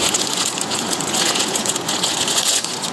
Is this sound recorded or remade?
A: remade